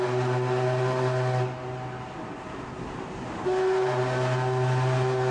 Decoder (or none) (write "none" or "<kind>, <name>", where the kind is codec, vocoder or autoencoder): none